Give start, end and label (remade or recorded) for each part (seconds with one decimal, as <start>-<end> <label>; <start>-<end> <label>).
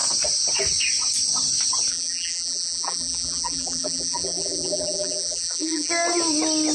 0.0-1.9 recorded; 1.9-5.9 remade; 5.9-6.7 recorded